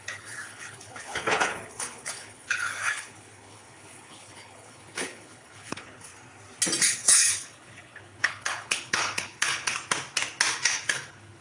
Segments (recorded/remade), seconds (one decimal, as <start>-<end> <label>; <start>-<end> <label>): 0.0-6.1 remade; 6.1-6.8 recorded; 6.8-9.7 remade; 9.7-10.5 recorded; 10.5-11.4 remade